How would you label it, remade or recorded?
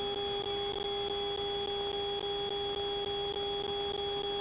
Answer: recorded